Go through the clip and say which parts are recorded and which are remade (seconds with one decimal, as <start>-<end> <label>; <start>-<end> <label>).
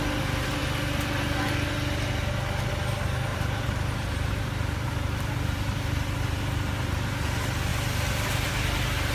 0.0-3.3 recorded; 3.3-4.9 remade; 4.9-7.7 recorded; 7.7-8.5 remade; 8.5-9.1 recorded